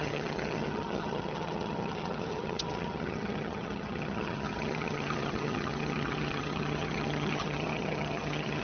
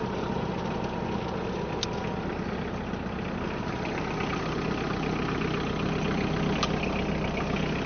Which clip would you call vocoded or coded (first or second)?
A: first